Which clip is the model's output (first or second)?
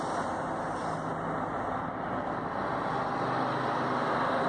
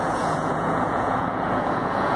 second